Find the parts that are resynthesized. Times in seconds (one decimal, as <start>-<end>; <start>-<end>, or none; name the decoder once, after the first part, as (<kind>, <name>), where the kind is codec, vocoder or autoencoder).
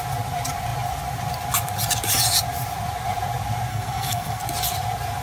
3.7-4.4 (codec, SNAC)